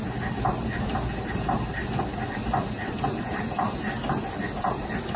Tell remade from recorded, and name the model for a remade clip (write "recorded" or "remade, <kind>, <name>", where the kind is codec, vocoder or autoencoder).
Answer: recorded